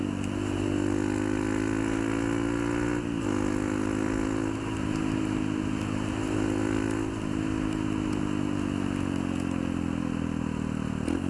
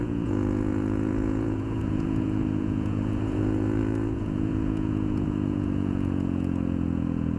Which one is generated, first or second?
second